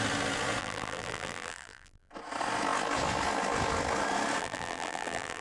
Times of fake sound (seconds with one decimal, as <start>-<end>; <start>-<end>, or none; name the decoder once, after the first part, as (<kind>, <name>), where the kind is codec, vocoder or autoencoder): 0.6-2.1 (vocoder, BigVGAN v2); 4.4-5.4